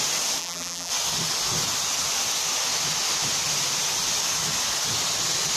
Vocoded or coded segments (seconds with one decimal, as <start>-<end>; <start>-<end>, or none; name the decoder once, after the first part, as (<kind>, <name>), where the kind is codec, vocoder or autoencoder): 0.4-0.9 (vocoder, BigVGAN v2)